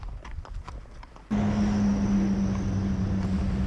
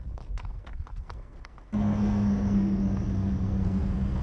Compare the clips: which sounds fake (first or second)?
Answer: second